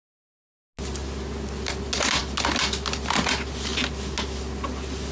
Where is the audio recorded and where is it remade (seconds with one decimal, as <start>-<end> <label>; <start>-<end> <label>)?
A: 0.0-5.1 recorded